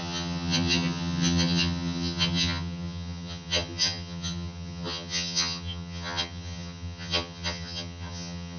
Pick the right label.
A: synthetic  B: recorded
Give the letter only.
A